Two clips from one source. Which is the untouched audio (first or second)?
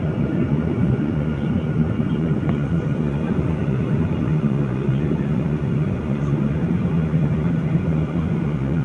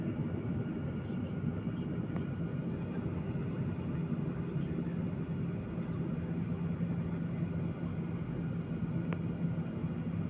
second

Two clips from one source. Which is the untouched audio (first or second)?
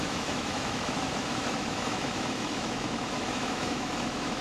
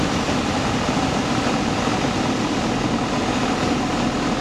second